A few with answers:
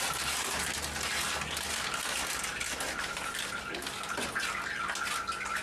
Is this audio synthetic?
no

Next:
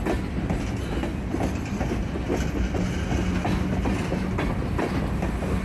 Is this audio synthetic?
no